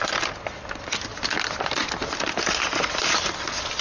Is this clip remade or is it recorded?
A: recorded